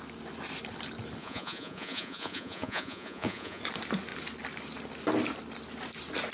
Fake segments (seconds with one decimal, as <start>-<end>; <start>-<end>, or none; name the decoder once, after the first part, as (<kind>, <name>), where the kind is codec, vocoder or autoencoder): 1.2-3.6 (vocoder, Vocos)